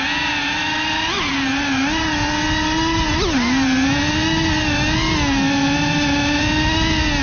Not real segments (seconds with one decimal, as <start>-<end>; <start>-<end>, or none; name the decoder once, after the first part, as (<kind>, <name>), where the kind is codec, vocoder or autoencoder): none